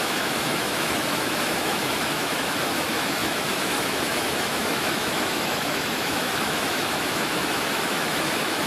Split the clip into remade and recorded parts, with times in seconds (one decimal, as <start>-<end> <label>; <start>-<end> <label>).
0.0-8.7 remade